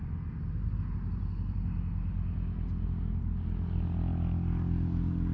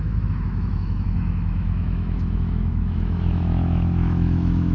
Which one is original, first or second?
first